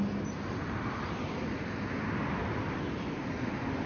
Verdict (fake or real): real